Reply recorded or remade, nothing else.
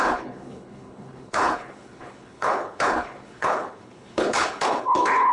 remade